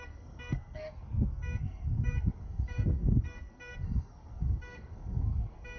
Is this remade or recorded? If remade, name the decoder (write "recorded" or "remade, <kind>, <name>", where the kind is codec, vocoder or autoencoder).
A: remade, codec, SNAC